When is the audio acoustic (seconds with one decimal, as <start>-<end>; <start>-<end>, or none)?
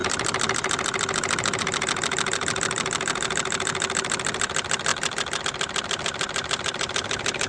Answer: 0.0-7.5